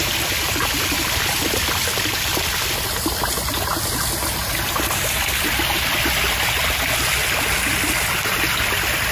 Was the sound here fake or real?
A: real